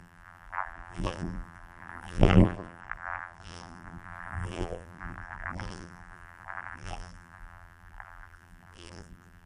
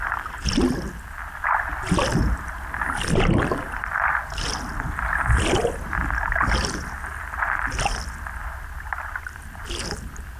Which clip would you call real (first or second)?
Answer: second